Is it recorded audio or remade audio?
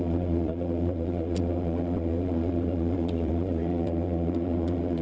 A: remade